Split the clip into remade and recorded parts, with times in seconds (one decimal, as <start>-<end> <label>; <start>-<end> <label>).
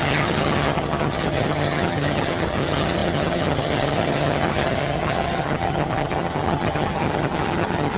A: 0.0-8.0 remade